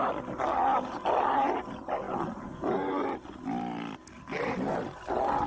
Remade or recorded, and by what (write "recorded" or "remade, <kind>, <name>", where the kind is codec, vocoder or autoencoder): recorded